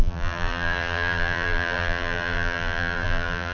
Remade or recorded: remade